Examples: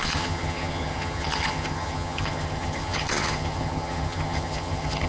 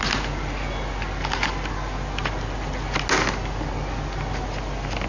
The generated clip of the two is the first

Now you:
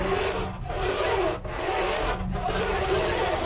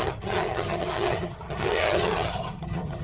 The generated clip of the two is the second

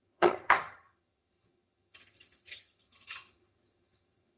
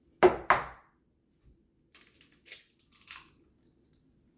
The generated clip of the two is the first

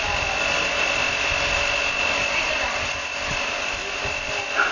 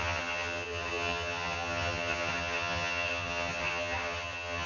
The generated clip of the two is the second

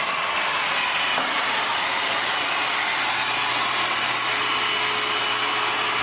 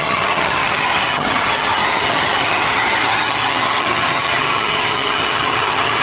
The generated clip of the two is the second